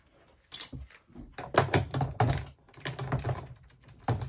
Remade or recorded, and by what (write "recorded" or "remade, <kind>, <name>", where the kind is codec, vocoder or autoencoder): recorded